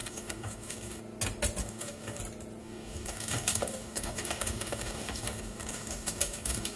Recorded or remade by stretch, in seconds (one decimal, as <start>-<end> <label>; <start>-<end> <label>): 0.0-1.0 remade; 1.0-1.6 recorded; 1.6-2.2 remade; 2.2-2.6 recorded; 2.6-6.8 remade